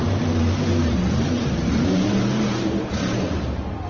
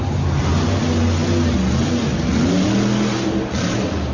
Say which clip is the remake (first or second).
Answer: first